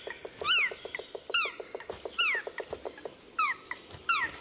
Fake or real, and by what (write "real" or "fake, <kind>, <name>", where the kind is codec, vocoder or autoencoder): real